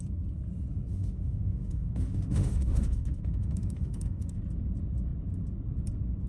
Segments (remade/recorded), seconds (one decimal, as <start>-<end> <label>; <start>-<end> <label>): 0.0-0.9 recorded; 0.9-4.4 remade; 4.4-6.3 recorded

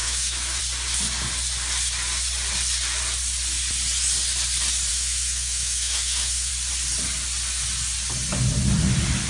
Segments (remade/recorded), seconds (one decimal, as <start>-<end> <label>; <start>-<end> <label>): 0.0-0.6 remade; 0.6-4.9 recorded; 4.9-6.5 remade; 6.5-9.3 recorded

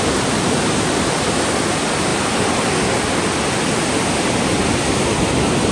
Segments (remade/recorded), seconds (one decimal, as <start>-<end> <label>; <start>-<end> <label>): 0.0-5.7 recorded

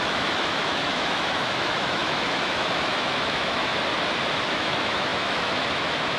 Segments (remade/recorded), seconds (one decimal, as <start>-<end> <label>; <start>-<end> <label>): 0.0-3.7 remade; 3.7-4.5 recorded; 4.5-6.2 remade

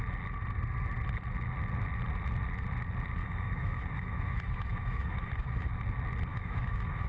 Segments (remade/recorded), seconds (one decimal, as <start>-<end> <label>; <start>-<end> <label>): 0.0-3.2 recorded; 3.2-5.8 remade; 5.8-6.3 recorded; 6.3-7.1 remade

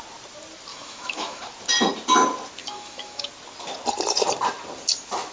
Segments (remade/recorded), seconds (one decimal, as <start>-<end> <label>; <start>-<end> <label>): 0.0-0.7 recorded; 0.7-1.4 remade; 1.4-2.6 recorded; 2.6-3.3 remade; 3.3-5.3 recorded